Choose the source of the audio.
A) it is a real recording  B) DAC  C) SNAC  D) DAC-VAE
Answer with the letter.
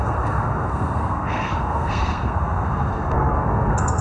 C